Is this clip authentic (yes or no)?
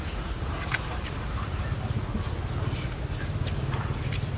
yes